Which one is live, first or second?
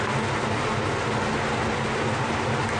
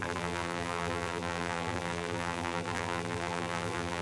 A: first